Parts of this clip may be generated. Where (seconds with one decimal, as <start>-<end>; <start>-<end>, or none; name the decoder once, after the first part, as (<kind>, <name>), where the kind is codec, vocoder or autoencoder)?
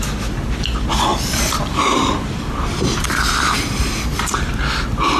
1.1-4.2 (vocoder, BigVGAN v2)